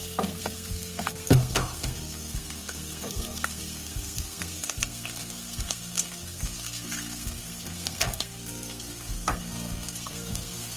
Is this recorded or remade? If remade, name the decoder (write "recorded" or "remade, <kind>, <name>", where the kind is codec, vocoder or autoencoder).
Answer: remade, codec, SNAC